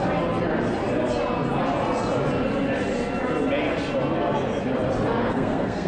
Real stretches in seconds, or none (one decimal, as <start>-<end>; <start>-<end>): 0.0-5.2

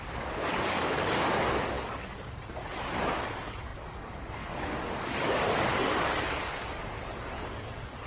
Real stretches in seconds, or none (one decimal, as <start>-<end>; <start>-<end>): none